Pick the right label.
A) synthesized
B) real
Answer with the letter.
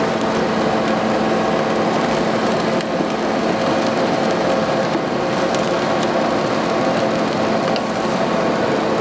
B